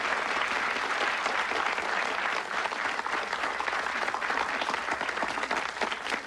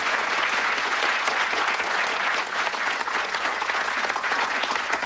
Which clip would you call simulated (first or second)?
second